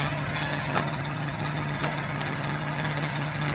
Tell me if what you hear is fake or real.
fake